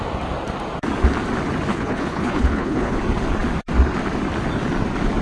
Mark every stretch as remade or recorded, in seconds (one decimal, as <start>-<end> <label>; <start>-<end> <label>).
0.0-1.7 recorded; 1.7-3.0 remade; 3.0-5.2 recorded